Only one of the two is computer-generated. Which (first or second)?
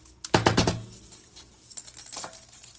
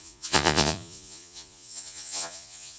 second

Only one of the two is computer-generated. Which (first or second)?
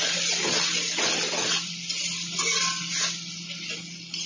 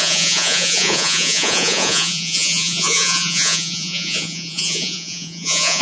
second